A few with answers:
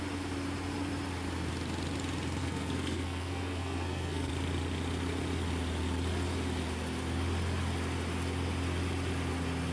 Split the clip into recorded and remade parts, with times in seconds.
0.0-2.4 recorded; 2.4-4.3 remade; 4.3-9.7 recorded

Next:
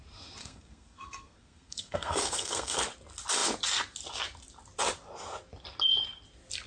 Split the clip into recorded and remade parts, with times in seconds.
0.0-0.4 recorded; 0.4-2.8 remade; 2.8-6.7 recorded

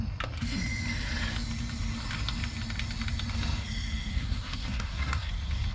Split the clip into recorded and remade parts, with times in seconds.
0.0-4.1 recorded; 4.1-5.3 remade; 5.3-5.7 recorded